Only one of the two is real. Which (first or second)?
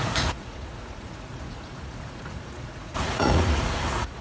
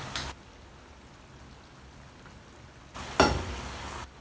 second